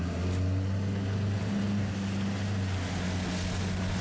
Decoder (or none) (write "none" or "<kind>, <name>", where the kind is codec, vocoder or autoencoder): none